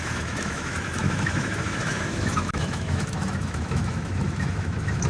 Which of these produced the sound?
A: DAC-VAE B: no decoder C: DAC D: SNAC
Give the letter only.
A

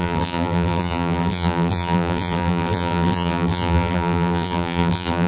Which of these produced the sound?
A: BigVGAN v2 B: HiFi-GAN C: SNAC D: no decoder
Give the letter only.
A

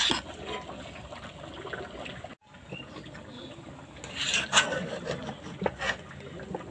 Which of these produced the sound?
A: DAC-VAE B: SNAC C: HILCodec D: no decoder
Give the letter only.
D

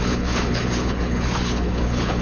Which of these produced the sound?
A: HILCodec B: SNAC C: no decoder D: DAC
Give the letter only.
A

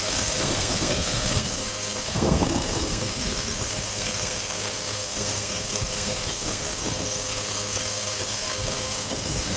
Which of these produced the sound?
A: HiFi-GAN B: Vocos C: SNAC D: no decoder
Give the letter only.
C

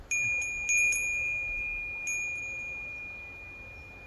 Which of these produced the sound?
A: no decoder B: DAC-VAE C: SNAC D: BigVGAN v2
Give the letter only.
A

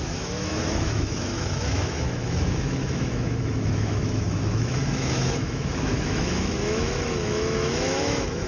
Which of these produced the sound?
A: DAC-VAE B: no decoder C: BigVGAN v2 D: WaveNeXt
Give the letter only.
A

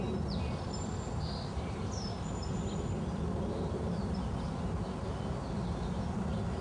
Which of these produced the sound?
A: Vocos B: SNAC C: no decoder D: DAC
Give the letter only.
C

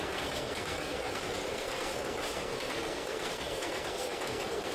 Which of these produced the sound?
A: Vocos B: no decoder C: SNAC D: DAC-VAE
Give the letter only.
C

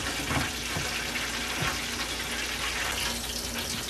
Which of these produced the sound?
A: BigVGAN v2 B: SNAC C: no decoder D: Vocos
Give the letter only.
C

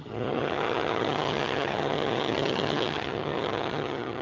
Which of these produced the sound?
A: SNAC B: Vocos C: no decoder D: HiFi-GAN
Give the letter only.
D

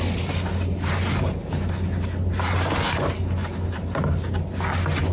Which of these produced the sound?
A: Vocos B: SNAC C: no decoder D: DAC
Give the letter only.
C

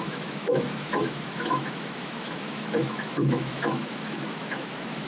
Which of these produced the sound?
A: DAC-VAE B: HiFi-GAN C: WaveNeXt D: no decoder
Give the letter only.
A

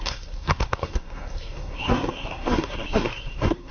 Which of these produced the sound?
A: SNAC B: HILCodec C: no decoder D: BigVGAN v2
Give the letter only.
A